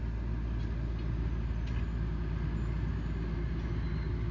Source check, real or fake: real